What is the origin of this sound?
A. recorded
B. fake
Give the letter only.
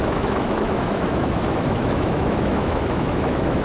B